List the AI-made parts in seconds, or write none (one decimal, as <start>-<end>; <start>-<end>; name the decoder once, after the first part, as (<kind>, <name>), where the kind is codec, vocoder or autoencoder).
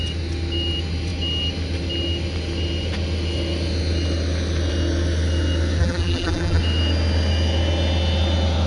5.8-6.6 (vocoder, BigVGAN v2)